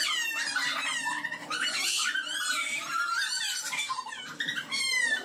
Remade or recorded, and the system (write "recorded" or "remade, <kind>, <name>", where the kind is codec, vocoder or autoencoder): remade, vocoder, BigVGAN v2